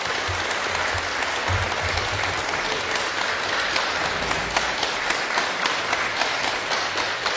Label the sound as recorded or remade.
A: recorded